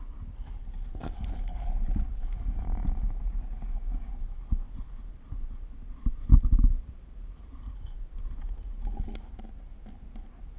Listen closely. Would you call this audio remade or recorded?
recorded